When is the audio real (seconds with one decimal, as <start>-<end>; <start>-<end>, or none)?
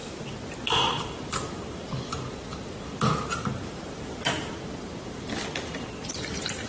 none